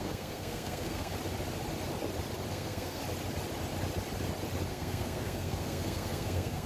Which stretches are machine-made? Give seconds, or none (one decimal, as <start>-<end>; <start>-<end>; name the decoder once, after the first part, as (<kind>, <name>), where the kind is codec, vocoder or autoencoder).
0.0-1.1 (codec, SNAC); 2.5-3.0; 4.7-6.7